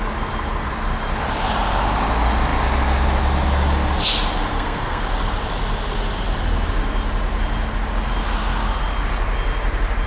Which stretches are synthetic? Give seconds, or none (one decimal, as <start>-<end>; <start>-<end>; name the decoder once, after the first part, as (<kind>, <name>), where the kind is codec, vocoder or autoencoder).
4.5-5.0 (codec, SNAC)